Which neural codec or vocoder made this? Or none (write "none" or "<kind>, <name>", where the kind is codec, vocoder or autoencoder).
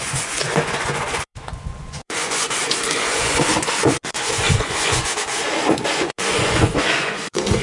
vocoder, Vocos